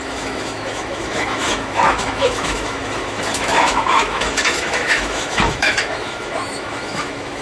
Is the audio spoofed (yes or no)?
yes